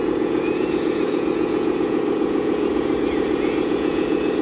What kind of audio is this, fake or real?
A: fake